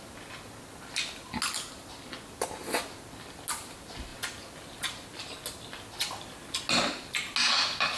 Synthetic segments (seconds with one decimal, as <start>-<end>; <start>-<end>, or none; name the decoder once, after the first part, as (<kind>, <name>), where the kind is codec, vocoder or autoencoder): none